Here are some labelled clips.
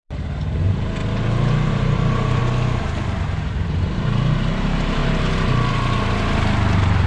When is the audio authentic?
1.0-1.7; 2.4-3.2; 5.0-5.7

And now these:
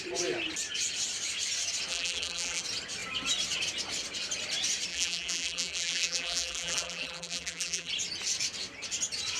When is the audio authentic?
0.0-1.9; 2.6-4.9; 7.9-9.4

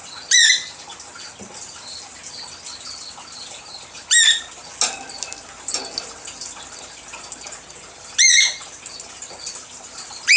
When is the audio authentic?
0.0-10.4